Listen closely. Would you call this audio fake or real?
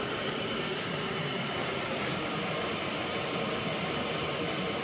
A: fake